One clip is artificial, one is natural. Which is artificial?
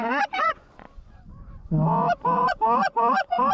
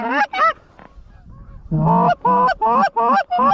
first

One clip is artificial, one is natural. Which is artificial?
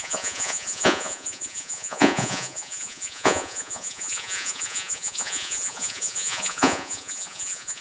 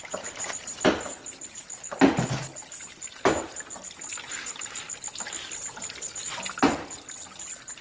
first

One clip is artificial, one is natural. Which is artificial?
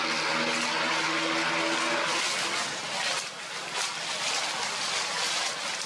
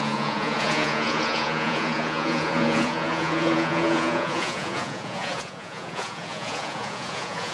second